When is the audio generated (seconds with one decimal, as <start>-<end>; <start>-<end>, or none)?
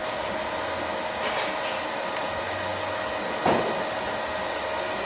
none